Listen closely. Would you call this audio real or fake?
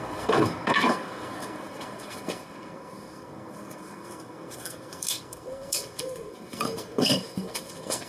fake